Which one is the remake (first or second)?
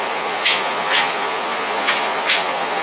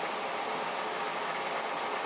first